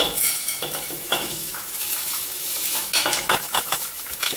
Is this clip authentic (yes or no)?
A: no